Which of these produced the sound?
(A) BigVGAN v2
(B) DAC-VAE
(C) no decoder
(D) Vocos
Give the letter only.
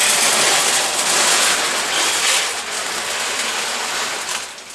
C